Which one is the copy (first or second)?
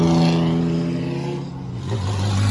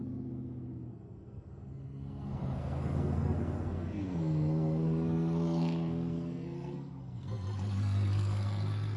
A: second